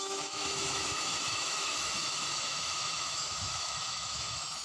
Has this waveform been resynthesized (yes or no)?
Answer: yes